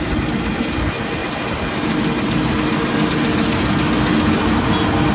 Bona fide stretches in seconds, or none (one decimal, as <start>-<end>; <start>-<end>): 0.0-5.1